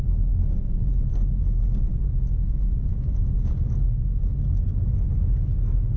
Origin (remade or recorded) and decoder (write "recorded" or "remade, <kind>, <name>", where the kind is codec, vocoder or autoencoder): recorded